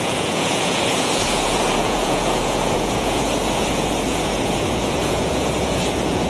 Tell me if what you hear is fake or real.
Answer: fake